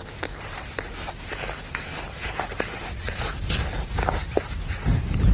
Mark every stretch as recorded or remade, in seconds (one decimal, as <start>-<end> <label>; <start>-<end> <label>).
0.0-5.3 recorded